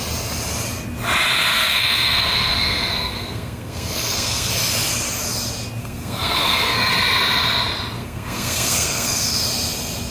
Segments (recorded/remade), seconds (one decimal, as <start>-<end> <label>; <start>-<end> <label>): 0.0-1.5 recorded; 1.5-4.5 remade; 4.5-5.8 recorded; 5.8-6.9 remade; 6.9-8.0 recorded; 8.0-9.4 remade; 9.4-10.1 recorded